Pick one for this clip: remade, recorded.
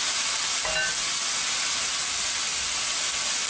recorded